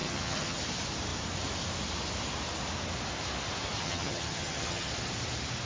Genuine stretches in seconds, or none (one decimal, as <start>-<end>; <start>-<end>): 0.6-3.8; 4.9-5.7